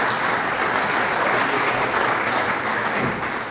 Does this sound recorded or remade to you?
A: recorded